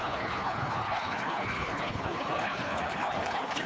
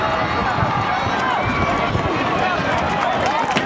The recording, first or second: second